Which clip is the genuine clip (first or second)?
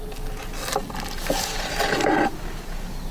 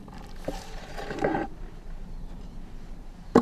first